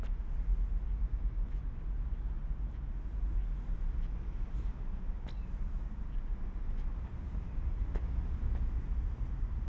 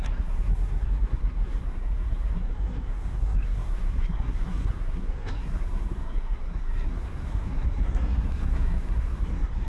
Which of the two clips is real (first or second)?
first